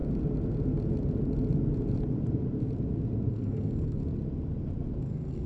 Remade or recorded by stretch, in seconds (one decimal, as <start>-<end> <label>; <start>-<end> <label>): 0.0-3.3 recorded; 3.3-4.0 remade; 4.0-5.0 recorded; 5.0-5.5 remade